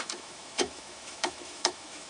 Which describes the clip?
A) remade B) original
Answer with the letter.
A